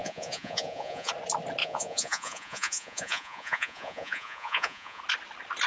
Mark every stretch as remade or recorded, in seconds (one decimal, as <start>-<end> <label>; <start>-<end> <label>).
0.0-1.1 remade; 1.1-1.6 recorded; 1.6-5.0 remade; 5.0-5.7 recorded